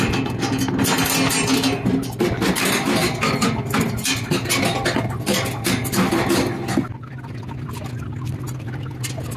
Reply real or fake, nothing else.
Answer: real